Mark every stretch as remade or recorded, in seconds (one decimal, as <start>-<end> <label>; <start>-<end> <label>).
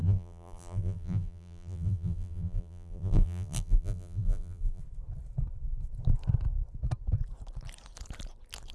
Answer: 0.0-4.8 remade; 4.8-8.7 recorded